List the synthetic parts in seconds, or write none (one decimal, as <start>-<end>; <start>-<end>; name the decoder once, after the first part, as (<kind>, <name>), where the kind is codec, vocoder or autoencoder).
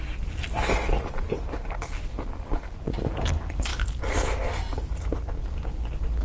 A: none